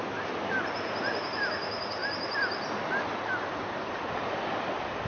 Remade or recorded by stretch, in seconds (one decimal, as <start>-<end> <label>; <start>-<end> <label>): 0.0-5.1 recorded